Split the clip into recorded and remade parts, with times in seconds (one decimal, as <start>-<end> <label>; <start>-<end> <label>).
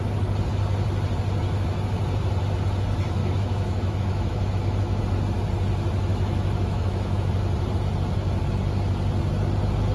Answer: 0.0-3.2 recorded; 3.2-5.0 remade; 5.0-6.1 recorded; 6.1-7.3 remade; 7.3-9.9 recorded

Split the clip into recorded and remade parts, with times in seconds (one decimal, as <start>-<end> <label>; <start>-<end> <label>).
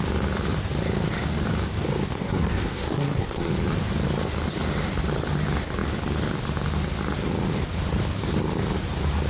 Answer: 0.0-2.2 recorded; 2.2-3.5 remade; 3.5-9.3 recorded